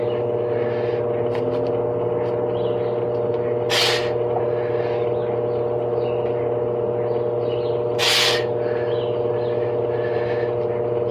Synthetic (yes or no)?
no